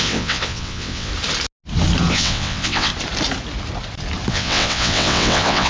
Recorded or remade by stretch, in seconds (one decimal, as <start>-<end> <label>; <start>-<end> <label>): 0.0-1.1 remade; 1.1-2.1 recorded; 2.1-2.9 remade; 2.9-4.3 recorded; 4.3-5.7 remade